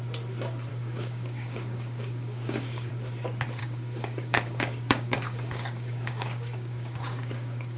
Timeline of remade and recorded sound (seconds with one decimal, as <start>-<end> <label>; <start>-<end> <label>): 0.0-0.7 recorded; 0.7-2.9 remade; 2.9-3.6 recorded; 3.6-7.8 remade